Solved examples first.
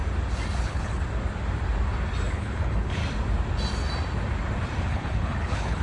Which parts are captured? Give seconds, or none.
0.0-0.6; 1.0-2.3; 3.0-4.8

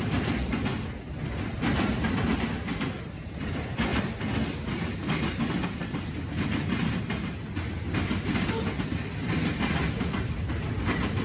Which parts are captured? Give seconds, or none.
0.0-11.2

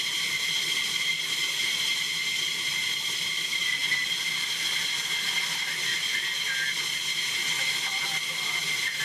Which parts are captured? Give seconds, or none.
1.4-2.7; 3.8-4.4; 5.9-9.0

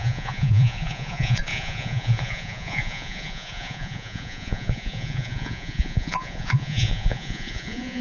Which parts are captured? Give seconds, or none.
none